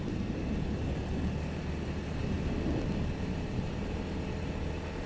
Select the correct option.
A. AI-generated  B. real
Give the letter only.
B